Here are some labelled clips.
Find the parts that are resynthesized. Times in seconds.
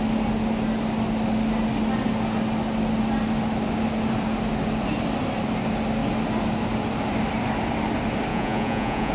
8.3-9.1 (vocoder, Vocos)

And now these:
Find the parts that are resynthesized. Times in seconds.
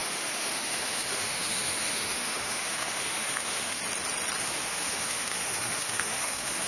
0.0-3.8 (autoencoder, DAC-VAE); 4.4-6.7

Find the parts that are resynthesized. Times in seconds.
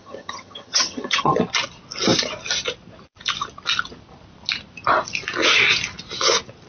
0.0-1.4 (vocoder, HiFi-GAN)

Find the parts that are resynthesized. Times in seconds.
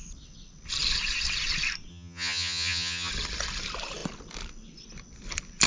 1.9-3.1 (vocoder, HiFi-GAN)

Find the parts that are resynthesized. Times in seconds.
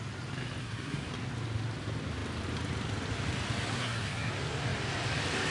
0.6-1.1 (codec, SNAC); 3.7-4.3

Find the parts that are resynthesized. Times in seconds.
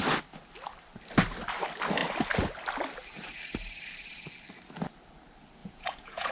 5.6-6.3 (vocoder, Vocos)